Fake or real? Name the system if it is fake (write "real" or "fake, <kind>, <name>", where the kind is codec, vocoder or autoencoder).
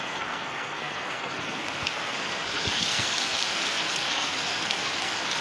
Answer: fake, codec, SNAC